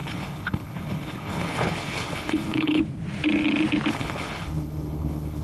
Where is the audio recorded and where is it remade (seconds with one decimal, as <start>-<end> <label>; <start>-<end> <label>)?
0.0-2.8 remade; 2.8-3.9 recorded; 3.9-5.4 remade